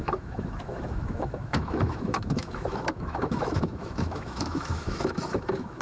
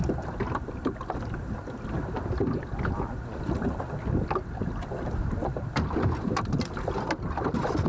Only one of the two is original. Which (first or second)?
second